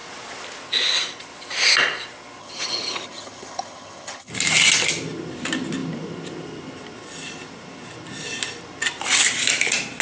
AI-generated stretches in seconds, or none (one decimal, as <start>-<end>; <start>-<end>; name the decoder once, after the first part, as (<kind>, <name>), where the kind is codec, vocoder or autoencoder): 2.4-4.3 (vocoder, HiFi-GAN)